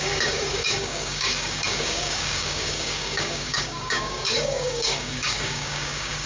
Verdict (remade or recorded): remade